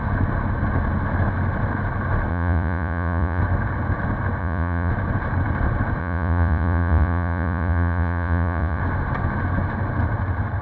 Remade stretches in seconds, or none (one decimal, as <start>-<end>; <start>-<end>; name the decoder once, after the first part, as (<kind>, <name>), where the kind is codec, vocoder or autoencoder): 2.3-3.4 (vocoder, Vocos); 4.4-4.9; 6.0-8.8